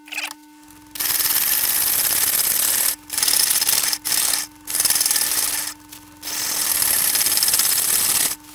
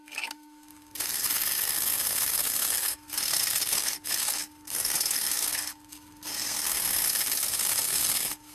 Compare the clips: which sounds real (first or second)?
first